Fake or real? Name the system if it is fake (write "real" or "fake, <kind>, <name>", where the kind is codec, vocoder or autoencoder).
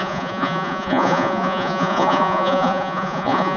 fake, vocoder, Vocos